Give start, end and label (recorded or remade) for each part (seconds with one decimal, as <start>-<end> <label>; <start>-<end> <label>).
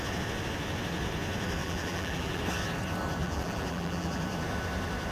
0.0-1.6 recorded; 1.6-2.4 remade; 2.4-3.2 recorded; 3.2-4.2 remade; 4.2-5.1 recorded